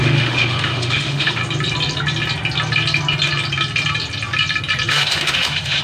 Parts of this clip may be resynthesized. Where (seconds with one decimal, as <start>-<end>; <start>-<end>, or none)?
0.0-1.4; 4.9-5.8